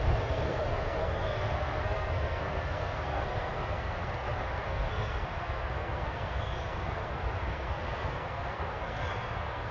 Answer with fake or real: fake